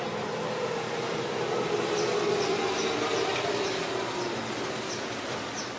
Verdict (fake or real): real